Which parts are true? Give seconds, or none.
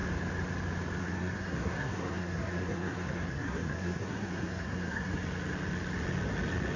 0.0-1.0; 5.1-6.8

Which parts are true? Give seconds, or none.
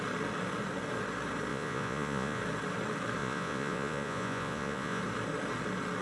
0.0-1.5; 2.4-3.2; 5.0-6.0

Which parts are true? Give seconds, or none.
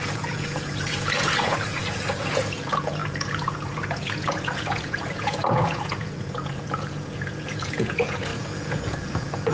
none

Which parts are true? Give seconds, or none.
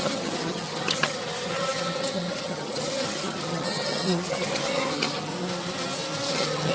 5.3-6.3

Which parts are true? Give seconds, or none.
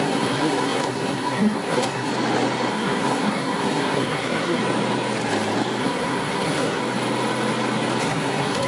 2.1-2.7; 4.6-5.8; 6.8-8.0